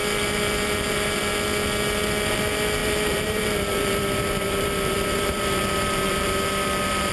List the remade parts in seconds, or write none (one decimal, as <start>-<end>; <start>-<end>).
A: 0.0-1.3; 2.8-7.1